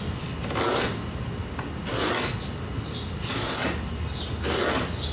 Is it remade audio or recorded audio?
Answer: recorded